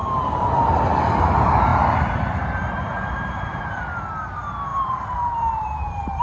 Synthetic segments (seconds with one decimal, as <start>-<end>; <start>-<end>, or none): 0.0-1.2; 1.7-4.0; 4.7-6.2

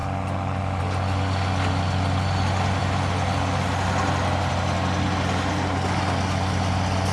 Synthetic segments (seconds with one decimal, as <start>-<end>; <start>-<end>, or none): none

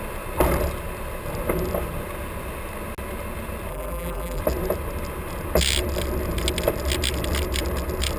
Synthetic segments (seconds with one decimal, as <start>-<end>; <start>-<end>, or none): 3.7-4.4

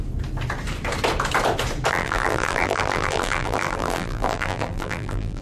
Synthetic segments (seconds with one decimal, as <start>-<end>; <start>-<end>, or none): 1.9-5.4

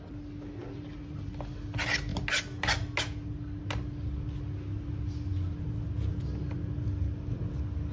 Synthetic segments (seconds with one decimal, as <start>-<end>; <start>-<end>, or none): 0.6-1.3

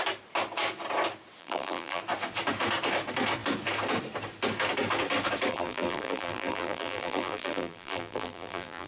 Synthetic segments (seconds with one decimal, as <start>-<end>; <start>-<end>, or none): 1.4-2.0; 5.5-8.9

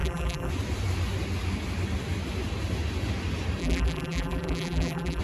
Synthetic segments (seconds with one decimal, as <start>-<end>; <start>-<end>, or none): 0.0-0.5; 3.6-5.2